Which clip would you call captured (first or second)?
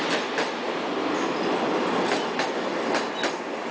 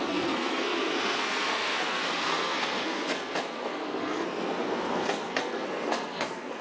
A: first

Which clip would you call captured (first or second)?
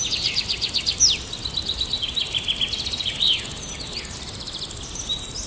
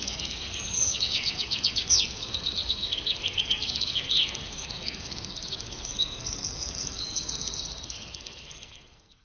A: first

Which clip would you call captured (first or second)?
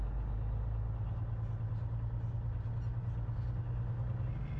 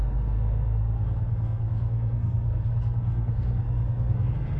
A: first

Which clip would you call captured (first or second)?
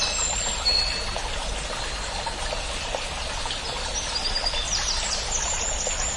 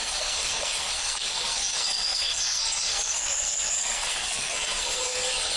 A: first